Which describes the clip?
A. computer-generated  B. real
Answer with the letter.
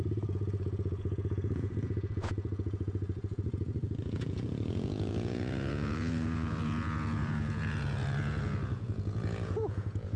A